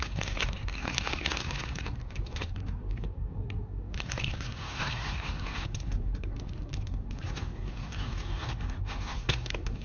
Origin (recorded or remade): remade